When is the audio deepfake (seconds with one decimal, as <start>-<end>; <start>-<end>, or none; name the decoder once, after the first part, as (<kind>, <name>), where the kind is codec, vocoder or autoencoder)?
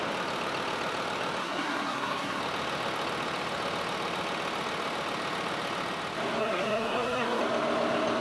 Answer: 1.4-2.4 (codec, SNAC); 6.4-7.4